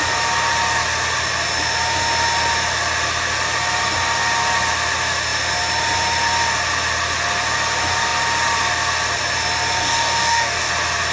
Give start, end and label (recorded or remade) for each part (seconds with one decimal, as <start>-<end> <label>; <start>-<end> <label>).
0.0-9.8 recorded; 9.8-10.7 remade; 10.7-11.1 recorded